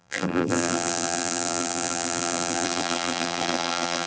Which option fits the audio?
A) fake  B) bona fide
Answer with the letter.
A